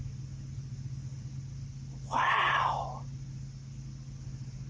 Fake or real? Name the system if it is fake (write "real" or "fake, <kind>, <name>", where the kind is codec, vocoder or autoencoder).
real